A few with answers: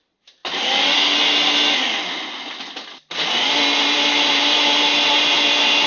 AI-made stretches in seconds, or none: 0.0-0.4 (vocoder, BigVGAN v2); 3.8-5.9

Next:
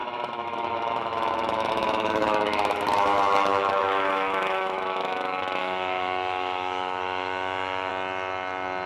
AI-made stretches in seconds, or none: 0.0-7.9 (autoencoder, DAC-VAE)

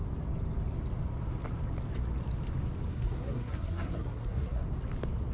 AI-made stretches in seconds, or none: 2.9-4.6 (codec, SNAC)

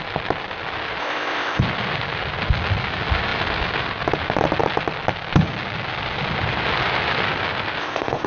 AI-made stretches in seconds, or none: 1.0-1.6 (codec, ZipCodec); 7.8-8.3

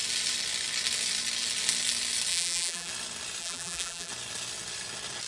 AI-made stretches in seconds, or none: 2.3-2.9 (vocoder, BigVGAN v2); 3.4-4.1

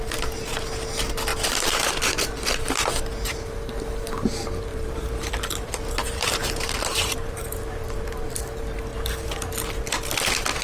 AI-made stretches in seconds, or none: 4.7-8.3 (vocoder, BigVGAN v2)